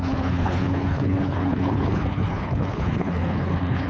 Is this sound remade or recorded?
remade